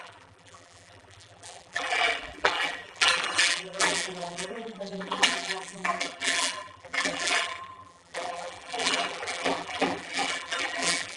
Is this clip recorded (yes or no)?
no